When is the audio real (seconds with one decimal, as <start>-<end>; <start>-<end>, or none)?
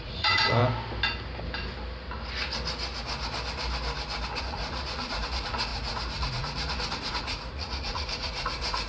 0.6-4.4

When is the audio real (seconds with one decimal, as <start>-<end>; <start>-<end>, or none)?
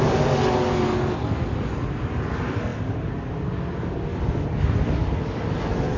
0.0-6.0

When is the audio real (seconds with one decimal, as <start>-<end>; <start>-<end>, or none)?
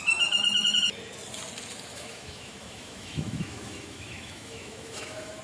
0.0-1.9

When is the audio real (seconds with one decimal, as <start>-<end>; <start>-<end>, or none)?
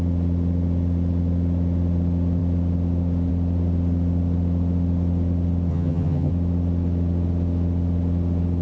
0.0-5.7; 6.3-8.6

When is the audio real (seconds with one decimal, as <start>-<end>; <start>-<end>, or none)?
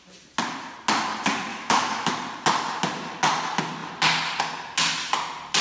0.0-1.5; 2.1-5.6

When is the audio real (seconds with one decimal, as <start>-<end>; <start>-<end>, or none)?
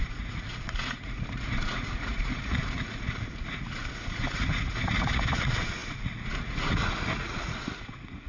none